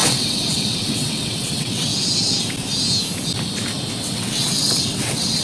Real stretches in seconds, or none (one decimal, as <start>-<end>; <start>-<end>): 1.9-4.0